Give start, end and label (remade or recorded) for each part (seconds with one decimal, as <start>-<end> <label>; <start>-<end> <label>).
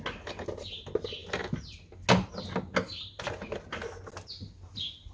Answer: 0.0-5.1 recorded